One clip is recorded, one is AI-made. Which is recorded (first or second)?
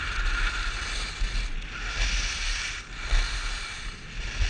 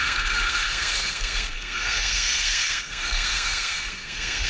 first